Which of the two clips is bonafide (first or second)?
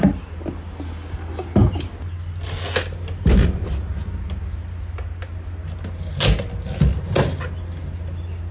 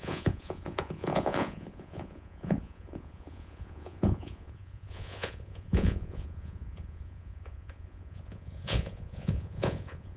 first